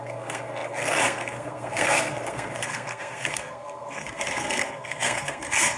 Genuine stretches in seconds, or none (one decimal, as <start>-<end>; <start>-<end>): none